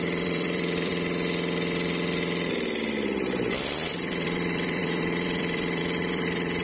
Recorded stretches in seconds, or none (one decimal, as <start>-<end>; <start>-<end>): 0.9-3.9